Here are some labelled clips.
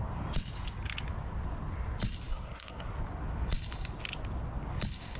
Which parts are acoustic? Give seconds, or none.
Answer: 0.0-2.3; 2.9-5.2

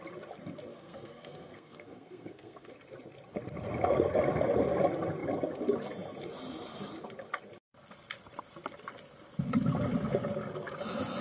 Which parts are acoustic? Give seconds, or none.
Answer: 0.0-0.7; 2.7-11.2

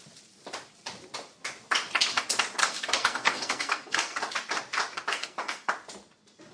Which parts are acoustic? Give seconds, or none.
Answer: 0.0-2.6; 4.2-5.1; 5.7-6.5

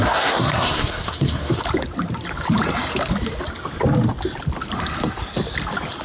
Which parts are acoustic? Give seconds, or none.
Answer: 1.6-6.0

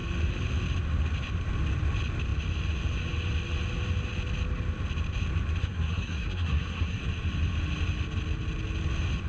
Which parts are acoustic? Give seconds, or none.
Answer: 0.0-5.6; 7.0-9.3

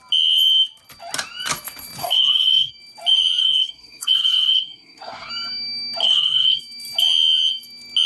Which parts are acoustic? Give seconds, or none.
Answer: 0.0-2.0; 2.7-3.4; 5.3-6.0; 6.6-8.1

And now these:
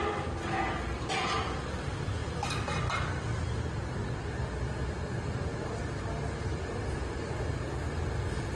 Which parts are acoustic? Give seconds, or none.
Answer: 0.0-8.6